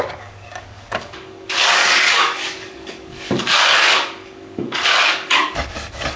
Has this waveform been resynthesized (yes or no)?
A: yes